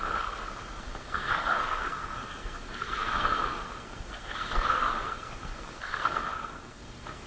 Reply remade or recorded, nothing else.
remade